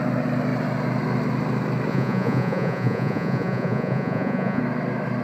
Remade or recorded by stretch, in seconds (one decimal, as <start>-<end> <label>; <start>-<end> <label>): 0.0-1.9 recorded; 1.9-4.6 remade; 4.6-5.2 recorded